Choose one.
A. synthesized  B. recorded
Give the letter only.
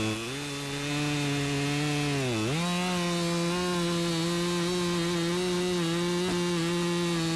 B